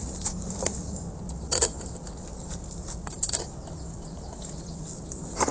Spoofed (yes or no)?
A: no